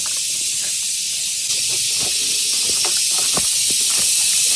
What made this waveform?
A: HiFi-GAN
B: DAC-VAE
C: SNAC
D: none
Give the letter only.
D